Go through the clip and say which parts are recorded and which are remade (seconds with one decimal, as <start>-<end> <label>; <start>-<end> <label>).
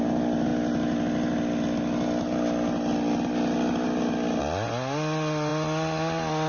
0.0-6.5 recorded